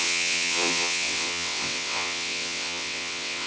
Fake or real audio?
fake